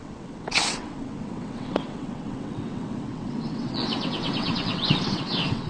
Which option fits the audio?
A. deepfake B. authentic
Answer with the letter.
A